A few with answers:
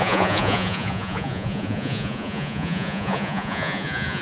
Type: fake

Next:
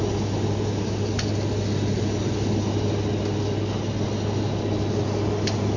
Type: real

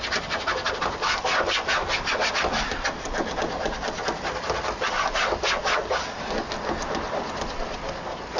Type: real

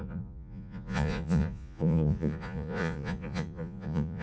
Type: fake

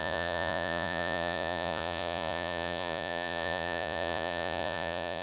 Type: fake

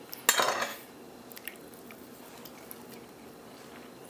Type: real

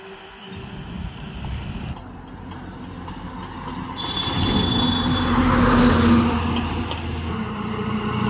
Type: real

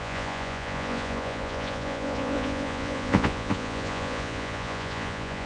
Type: fake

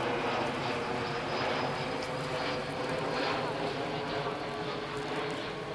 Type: real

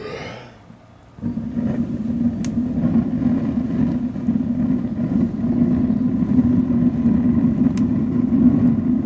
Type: real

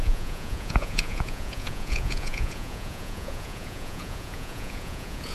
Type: fake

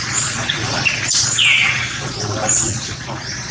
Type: fake